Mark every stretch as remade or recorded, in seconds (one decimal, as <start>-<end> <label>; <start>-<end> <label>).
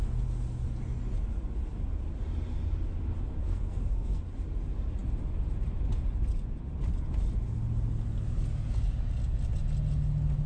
0.0-3.4 recorded; 3.4-4.2 remade; 4.2-10.5 recorded